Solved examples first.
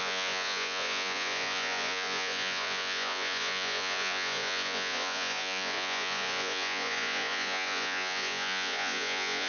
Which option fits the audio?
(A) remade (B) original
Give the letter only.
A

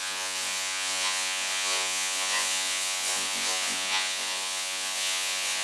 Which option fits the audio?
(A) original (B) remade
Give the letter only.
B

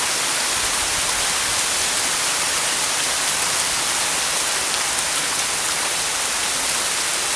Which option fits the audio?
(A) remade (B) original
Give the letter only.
B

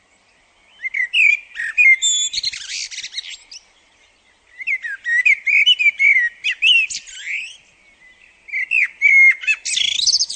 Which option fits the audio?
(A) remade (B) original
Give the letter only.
B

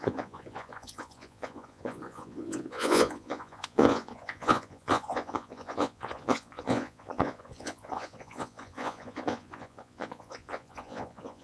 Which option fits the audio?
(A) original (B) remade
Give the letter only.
B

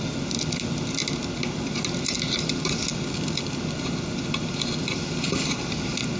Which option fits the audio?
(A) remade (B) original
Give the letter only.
B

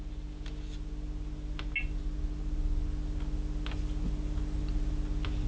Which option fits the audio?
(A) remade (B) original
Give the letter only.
B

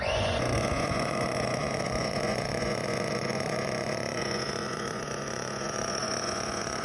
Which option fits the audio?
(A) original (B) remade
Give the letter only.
B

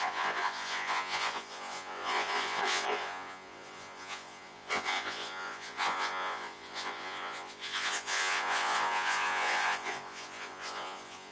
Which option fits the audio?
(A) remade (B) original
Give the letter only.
A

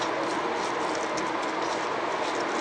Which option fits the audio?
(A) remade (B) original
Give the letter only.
B